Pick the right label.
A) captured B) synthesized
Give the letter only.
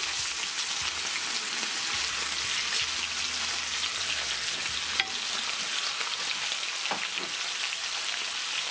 A